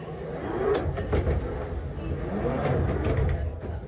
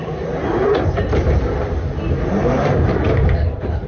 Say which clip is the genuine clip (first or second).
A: first